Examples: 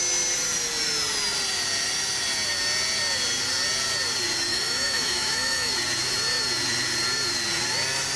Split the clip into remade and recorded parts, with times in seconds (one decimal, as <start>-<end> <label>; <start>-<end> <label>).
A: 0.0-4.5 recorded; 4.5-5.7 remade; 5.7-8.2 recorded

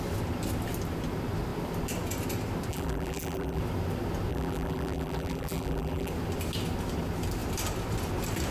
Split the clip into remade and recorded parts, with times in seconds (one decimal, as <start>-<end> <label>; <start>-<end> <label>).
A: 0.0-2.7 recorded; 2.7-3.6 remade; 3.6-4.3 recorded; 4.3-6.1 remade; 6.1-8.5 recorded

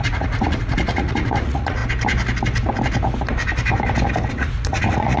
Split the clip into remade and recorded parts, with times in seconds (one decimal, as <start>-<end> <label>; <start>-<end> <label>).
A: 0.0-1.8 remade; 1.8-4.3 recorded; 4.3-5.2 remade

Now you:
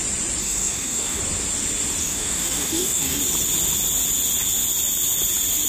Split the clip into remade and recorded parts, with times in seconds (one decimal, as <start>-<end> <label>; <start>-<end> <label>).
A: 0.0-0.4 recorded; 0.4-1.2 remade; 1.2-2.0 recorded; 2.0-3.2 remade; 3.2-5.7 recorded